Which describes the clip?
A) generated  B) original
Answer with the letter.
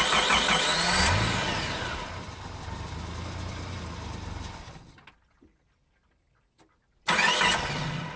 B